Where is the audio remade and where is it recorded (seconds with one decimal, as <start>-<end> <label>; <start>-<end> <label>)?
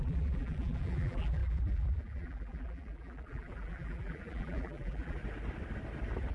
0.0-5.2 remade; 5.2-6.3 recorded